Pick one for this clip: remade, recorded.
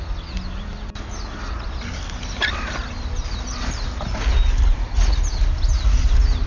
recorded